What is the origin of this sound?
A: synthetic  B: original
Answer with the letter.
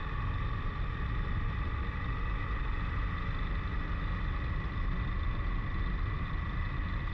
B